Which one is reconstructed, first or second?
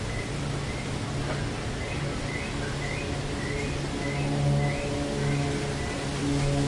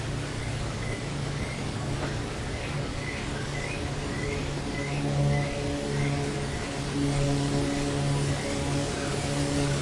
second